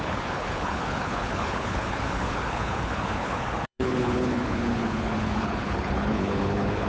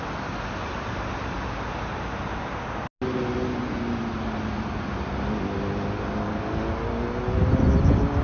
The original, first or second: second